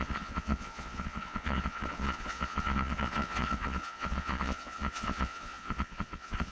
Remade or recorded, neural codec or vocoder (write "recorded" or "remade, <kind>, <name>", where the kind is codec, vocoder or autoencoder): remade, vocoder, Vocos